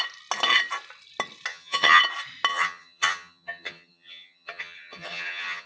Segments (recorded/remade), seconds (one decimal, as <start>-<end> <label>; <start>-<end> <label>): 0.0-1.5 recorded; 1.5-2.0 remade; 2.0-2.5 recorded; 2.5-5.7 remade